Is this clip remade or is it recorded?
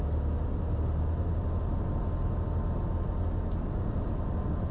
recorded